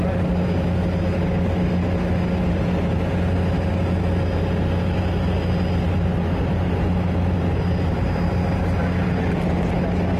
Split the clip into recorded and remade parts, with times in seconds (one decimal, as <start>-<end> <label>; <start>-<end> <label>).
0.0-10.2 recorded